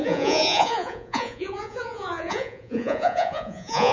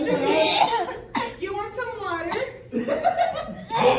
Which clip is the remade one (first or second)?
first